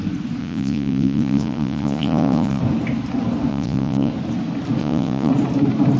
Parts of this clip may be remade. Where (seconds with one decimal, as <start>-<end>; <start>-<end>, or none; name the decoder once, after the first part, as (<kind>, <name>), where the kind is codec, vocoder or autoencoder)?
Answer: 0.4-2.6 (vocoder, Vocos); 3.5-4.1; 4.8-5.3